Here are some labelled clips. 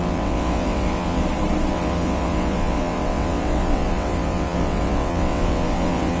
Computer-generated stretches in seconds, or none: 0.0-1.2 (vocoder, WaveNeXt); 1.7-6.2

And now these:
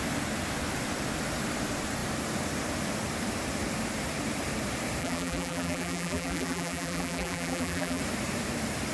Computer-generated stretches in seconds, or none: 5.0-8.0 (vocoder, BigVGAN v2)

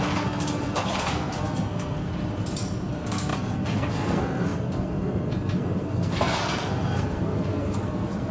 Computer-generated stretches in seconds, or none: 0.0-2.1 (codec, SNAC); 2.9-8.3

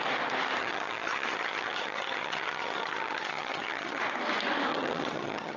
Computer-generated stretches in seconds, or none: 0.6-4.0 (vocoder, HiFi-GAN); 4.7-5.6

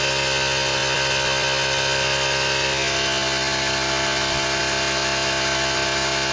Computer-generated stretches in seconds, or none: none

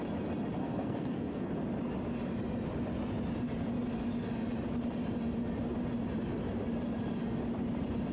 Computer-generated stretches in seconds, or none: 0.6-1.5 (codec, SNAC)

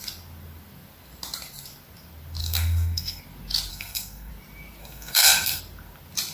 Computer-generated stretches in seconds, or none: 2.4-3.2 (codec, SNAC); 3.7-4.3; 4.8-5.6